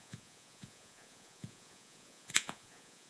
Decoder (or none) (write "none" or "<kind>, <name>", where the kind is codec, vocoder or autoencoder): vocoder, Vocos